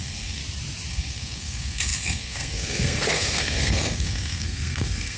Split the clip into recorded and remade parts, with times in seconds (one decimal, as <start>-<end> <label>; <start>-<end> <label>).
0.0-0.4 remade; 0.4-0.9 recorded; 0.9-5.2 remade